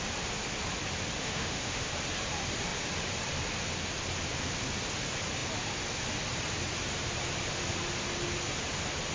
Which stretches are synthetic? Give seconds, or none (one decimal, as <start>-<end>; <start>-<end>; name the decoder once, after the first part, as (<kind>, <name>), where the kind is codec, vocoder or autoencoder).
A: 1.2-1.9 (autoencoder, DAC-VAE)